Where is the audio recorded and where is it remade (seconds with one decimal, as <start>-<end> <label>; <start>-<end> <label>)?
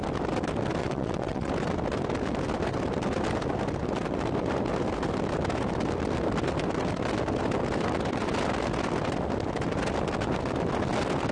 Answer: 0.0-0.8 recorded; 0.8-1.5 remade; 1.5-11.3 recorded